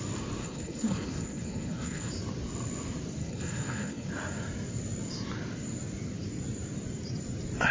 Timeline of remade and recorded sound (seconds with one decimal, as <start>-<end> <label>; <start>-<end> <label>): 0.0-0.4 recorded; 0.4-2.1 remade; 2.1-3.2 recorded; 3.2-4.1 remade; 4.1-7.7 recorded